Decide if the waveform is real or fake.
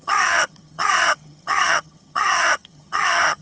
fake